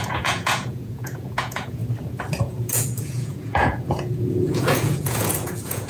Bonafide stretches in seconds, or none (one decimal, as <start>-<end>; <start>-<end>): 1.8-2.4